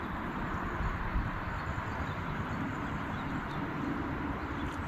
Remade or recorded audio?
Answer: recorded